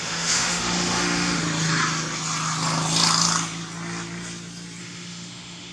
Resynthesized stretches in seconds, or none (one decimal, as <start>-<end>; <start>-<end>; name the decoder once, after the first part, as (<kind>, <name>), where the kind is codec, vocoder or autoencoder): 0.0-1.4 (autoencoder, DAC-VAE); 4.8-5.7